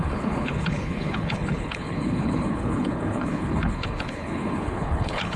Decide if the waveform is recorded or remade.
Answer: remade